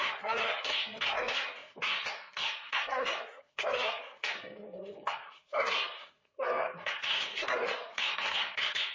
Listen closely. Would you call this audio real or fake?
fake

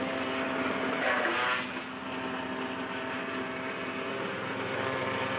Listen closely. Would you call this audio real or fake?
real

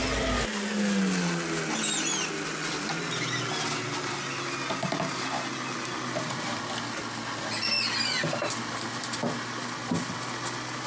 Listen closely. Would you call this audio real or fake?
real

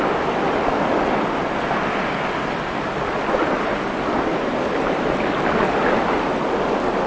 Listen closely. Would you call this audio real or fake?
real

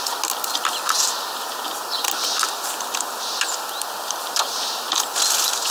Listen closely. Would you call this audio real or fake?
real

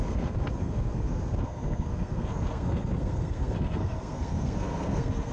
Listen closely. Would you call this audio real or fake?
fake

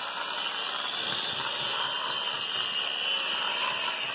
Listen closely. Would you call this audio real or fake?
real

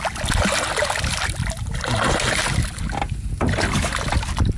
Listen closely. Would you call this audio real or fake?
real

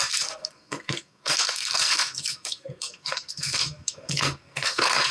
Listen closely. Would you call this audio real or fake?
fake